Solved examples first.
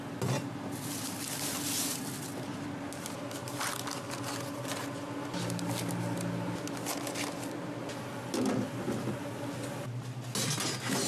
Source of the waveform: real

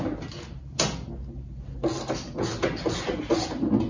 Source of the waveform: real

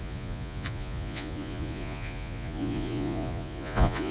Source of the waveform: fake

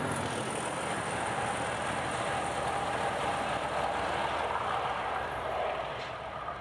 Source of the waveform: real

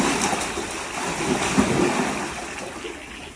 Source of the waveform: real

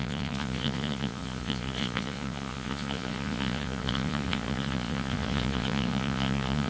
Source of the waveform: fake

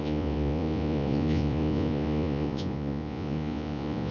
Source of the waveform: fake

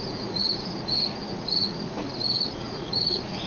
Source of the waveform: fake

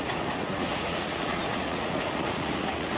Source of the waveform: fake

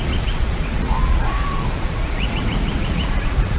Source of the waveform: fake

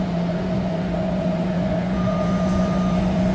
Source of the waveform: fake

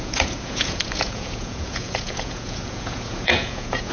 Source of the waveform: fake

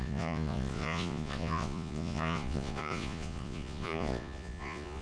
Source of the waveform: fake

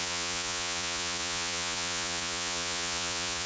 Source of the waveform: fake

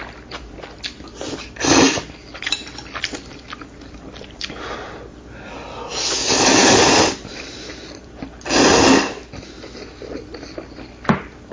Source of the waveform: real